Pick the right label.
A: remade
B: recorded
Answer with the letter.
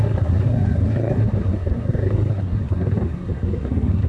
A